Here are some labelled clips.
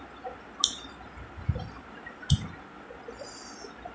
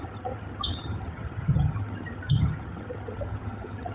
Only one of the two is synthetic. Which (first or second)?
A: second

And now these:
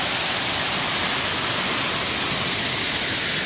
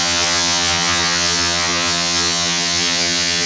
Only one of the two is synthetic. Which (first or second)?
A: second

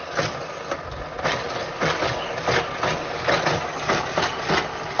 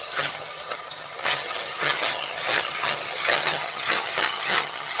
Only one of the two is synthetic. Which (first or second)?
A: second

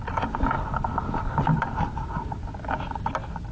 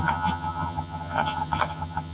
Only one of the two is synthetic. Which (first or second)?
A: second